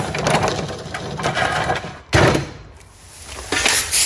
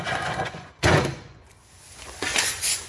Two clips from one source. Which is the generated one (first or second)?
second